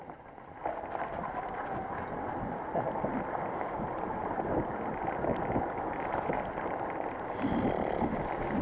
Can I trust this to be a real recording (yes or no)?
yes